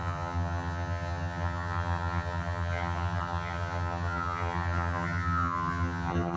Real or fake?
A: fake